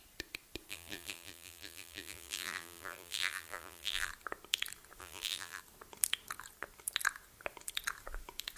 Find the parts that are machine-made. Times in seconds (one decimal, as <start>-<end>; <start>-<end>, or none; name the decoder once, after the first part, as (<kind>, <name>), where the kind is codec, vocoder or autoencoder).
0.7-4.1 (vocoder, BigVGAN v2); 5.0-5.6